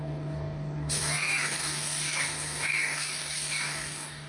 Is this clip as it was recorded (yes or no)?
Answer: no